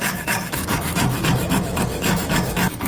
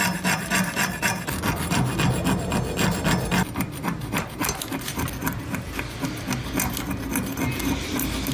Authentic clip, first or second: second